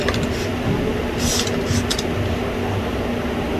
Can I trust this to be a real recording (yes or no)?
yes